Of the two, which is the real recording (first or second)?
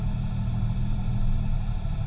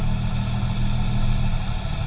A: second